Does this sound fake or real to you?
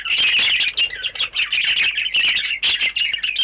real